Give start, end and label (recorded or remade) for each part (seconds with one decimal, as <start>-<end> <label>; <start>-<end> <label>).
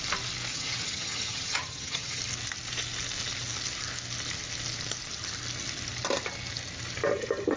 0.0-0.5 recorded; 0.5-2.2 remade; 2.2-7.6 recorded